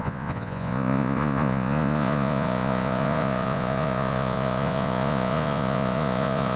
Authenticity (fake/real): fake